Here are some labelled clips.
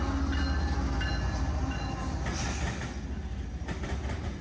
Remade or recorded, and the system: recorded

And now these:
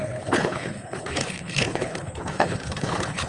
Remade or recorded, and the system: remade, codec, HILCodec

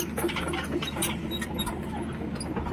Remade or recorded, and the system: recorded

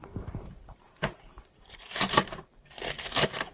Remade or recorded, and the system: remade, vocoder, BigVGAN v2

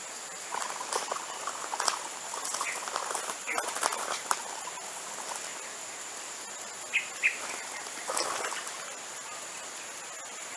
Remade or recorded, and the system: recorded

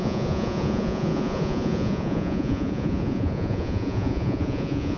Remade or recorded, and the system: remade, vocoder, Vocos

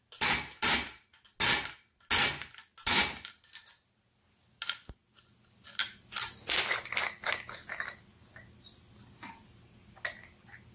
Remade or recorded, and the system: recorded